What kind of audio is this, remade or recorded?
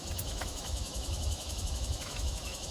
remade